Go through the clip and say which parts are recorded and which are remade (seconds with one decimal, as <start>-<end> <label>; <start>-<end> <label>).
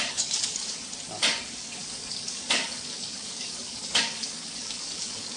0.0-0.8 remade; 0.8-1.4 recorded; 1.4-5.4 remade